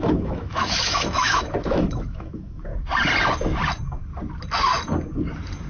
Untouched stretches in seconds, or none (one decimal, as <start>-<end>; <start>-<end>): 2.7-5.7